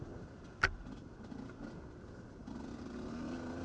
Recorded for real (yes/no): yes